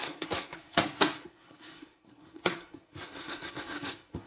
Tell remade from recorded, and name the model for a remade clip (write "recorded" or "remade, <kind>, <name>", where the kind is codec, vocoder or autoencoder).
remade, codec, SNAC